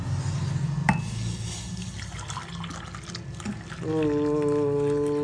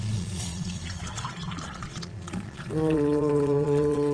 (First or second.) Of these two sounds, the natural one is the first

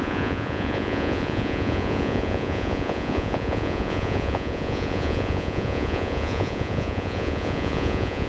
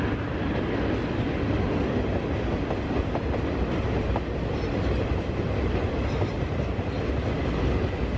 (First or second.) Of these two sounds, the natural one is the second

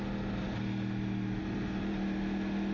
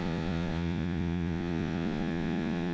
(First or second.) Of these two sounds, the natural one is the first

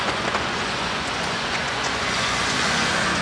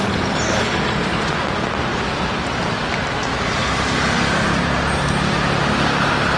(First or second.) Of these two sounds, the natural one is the second